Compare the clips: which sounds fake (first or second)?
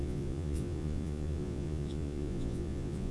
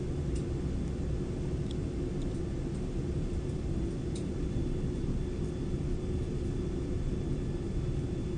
first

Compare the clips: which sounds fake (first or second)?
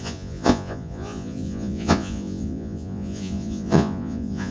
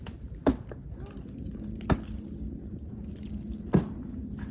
first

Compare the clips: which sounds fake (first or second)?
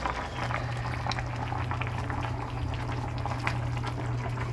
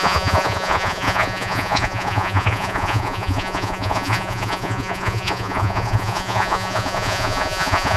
second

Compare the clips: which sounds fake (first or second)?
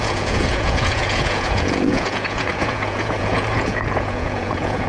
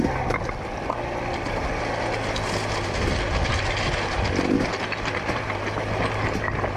first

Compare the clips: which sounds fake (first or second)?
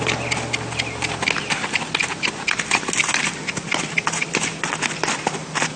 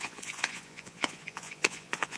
second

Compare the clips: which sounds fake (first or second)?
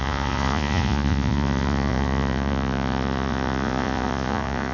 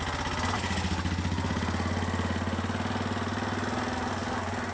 first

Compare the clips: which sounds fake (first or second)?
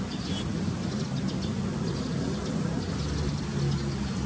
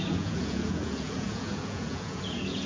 second